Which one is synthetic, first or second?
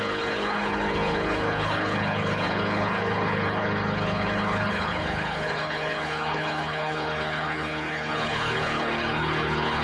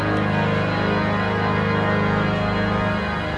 first